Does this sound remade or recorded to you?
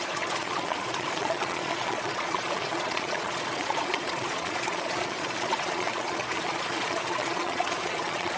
remade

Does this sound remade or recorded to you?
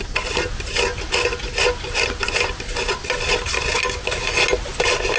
recorded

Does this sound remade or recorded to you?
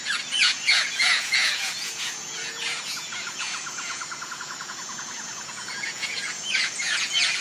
remade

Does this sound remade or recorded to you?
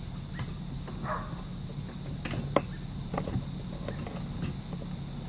recorded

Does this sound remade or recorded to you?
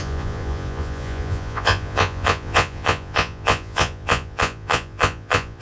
remade